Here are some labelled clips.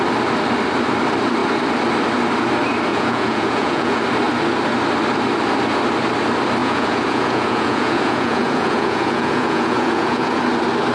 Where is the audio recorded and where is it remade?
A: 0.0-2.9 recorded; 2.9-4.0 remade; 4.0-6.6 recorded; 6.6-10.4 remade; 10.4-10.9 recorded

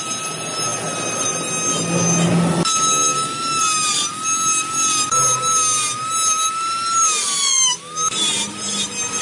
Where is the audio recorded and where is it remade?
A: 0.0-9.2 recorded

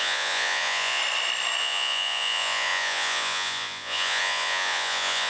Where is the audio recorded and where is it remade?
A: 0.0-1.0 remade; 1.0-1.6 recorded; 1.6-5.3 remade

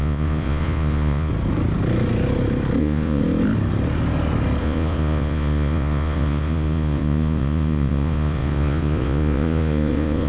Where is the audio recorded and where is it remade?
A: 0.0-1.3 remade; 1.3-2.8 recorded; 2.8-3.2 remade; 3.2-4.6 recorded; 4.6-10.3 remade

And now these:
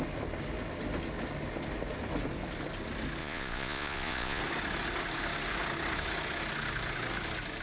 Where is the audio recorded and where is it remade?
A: 0.0-3.2 recorded; 3.2-4.4 remade; 4.4-7.6 recorded

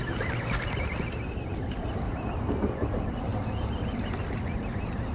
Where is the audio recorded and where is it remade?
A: 0.0-5.1 recorded

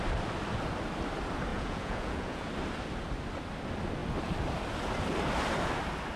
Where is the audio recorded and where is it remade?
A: 0.0-1.5 recorded; 1.5-2.5 remade; 2.5-6.2 recorded

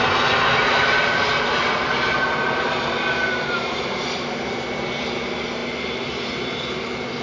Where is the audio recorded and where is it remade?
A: 0.0-7.2 recorded